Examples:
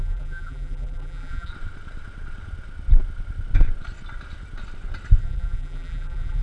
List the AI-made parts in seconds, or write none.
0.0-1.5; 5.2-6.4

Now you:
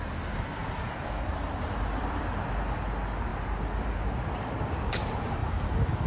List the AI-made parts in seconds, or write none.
0.6-2.2; 5.4-6.1

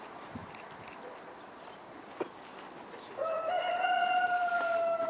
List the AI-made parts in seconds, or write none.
none

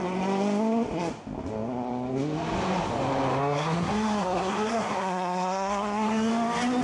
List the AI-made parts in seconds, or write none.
3.4-6.3

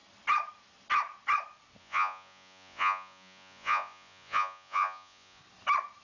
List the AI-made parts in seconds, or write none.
1.8-5.4

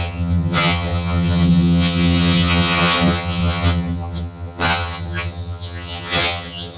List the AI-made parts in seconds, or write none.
0.0-6.8

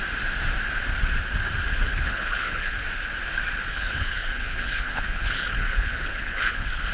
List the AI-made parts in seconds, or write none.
1.7-2.8; 3.7-6.9

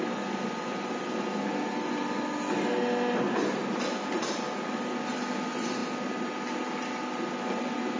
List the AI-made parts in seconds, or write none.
none